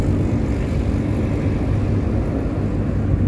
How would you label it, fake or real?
real